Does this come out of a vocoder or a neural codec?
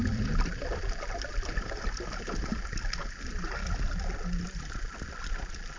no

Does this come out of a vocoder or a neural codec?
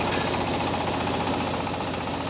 no